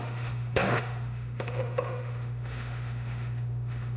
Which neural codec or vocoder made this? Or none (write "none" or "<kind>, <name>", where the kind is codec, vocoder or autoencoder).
autoencoder, DAC-VAE